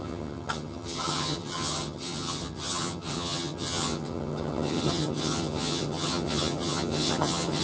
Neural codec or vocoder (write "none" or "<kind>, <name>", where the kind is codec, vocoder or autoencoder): vocoder, HiFi-GAN